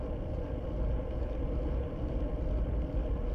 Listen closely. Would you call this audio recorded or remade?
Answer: recorded